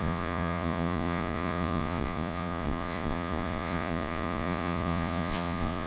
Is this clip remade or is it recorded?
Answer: remade